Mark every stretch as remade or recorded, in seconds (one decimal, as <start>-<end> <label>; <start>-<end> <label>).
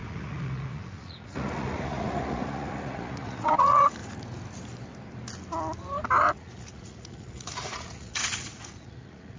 0.0-4.0 remade; 4.0-6.3 recorded; 6.3-9.4 remade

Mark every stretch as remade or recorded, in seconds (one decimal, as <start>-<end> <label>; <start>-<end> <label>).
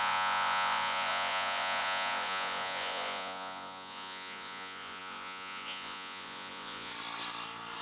0.0-6.9 remade; 6.9-7.8 recorded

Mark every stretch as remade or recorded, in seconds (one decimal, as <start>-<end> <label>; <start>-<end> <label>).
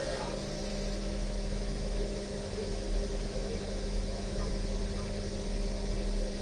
0.0-0.7 recorded; 0.7-4.5 remade; 4.5-6.4 recorded